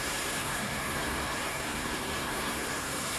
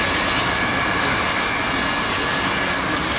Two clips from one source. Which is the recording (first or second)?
second